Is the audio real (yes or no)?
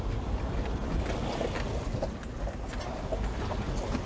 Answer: yes